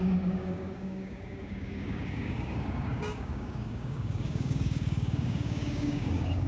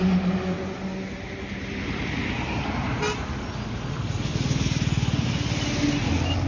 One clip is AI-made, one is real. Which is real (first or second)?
second